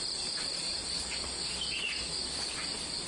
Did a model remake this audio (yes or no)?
no